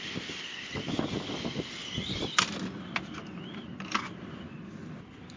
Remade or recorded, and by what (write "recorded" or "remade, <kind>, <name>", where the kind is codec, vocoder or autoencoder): recorded